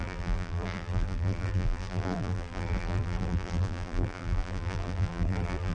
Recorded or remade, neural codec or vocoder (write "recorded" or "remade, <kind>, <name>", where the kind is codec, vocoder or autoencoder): remade, vocoder, BigVGAN v2